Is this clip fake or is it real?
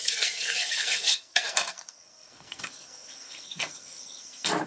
fake